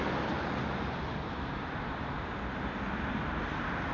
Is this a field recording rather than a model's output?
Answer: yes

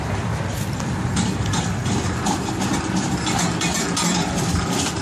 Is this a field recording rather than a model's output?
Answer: yes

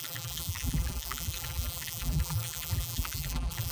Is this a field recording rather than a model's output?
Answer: no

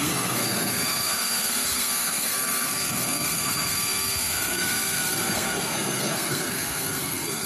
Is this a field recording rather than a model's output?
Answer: no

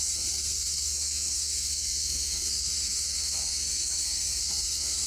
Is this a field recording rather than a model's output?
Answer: no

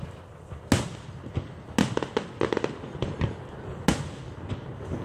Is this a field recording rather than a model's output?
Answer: yes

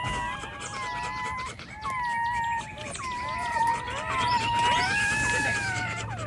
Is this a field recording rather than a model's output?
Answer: yes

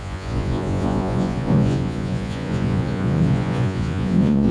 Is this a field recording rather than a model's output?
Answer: no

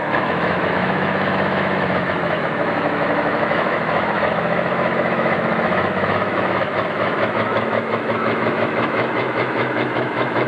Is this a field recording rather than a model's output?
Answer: no